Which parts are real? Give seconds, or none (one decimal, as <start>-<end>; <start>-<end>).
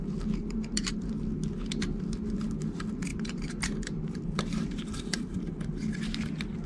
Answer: 0.0-0.4; 1.1-3.1; 5.7-6.7